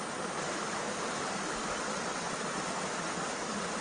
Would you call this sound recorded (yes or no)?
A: yes